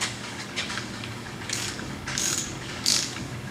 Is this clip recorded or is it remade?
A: remade